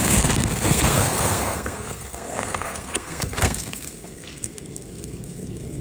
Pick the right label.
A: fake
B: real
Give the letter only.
A